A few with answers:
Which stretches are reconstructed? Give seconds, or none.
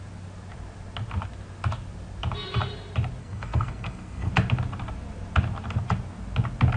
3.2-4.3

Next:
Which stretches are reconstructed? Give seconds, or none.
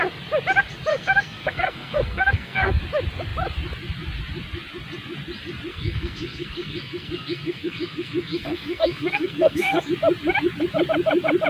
0.9-2.8; 5.7-9.9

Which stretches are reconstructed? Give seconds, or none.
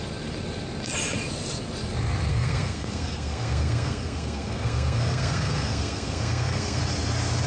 2.3-6.8